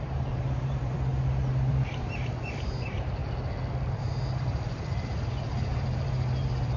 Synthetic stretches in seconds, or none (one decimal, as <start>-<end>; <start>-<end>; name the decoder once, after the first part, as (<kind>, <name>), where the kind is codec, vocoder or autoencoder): 0.0-1.1 (vocoder, BigVGAN v2); 1.7-3.2; 3.9-6.8